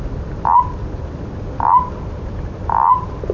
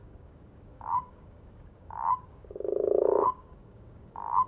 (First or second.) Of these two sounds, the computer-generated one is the second